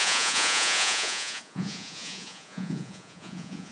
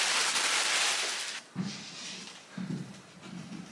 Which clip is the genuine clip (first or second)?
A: second